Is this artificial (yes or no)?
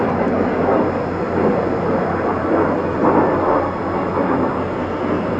no